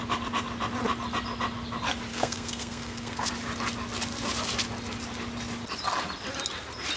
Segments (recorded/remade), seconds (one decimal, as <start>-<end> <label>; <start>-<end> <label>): 0.0-2.1 recorded; 2.1-3.3 remade; 3.3-7.0 recorded